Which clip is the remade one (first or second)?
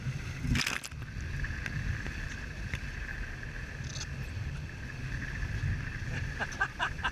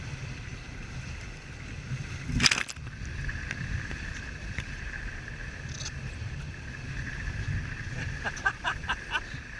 second